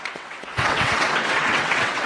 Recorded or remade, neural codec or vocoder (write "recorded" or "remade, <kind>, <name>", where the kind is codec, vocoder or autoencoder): remade, vocoder, WaveNeXt